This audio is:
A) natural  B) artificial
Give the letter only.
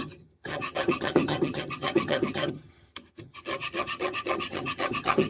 B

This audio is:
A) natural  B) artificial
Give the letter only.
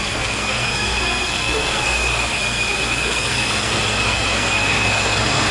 B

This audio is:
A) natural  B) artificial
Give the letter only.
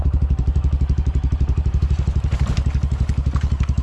B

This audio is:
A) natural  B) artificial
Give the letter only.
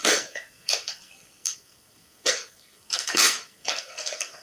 B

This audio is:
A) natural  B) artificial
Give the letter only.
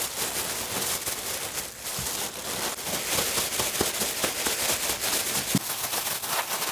A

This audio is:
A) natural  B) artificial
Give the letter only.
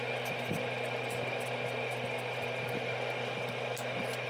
A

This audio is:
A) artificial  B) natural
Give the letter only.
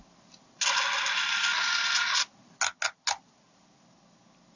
B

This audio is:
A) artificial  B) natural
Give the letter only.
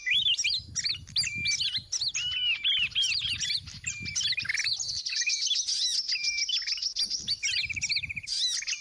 B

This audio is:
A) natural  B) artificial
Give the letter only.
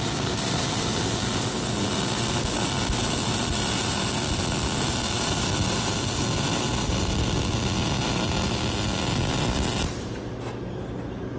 A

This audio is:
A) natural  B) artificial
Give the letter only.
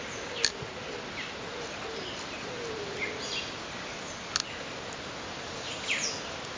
A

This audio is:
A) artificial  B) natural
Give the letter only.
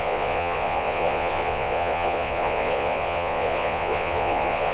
A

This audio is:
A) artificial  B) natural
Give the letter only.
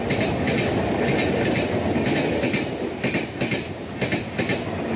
B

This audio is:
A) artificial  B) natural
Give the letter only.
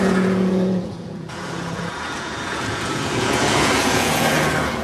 A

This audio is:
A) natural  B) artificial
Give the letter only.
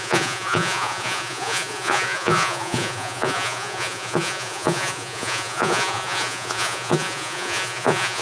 B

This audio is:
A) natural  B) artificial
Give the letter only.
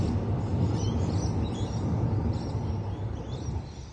A